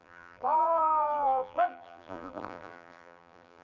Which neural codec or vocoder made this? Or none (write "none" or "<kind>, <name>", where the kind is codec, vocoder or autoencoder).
vocoder, BigVGAN v2